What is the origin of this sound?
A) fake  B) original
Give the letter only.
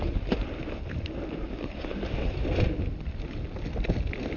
B